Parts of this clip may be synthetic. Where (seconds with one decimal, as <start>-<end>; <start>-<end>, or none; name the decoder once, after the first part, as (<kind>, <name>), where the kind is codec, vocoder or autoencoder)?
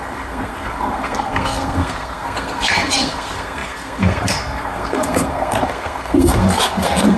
0.0-7.2 (codec, SNAC)